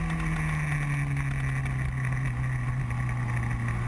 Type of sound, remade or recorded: recorded